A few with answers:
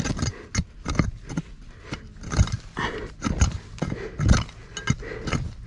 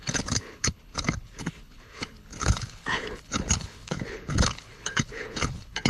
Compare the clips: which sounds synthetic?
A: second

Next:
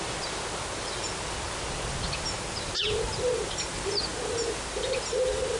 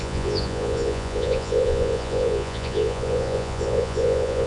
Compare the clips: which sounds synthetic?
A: second